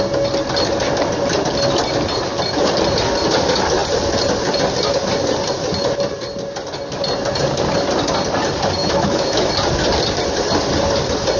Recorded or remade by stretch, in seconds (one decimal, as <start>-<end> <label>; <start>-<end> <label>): 0.0-8.8 recorded; 8.8-9.5 remade; 9.5-11.4 recorded